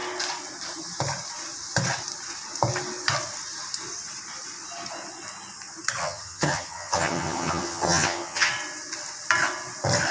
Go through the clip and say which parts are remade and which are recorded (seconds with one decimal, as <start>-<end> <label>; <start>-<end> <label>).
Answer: 0.0-6.0 recorded; 6.0-8.5 remade; 8.5-10.1 recorded